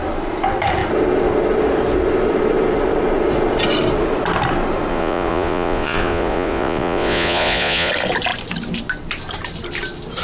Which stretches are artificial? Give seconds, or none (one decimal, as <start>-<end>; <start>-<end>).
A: 4.9-7.9